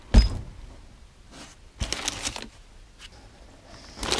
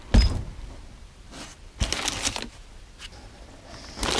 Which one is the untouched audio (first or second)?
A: first